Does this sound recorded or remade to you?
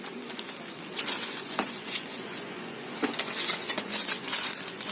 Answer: remade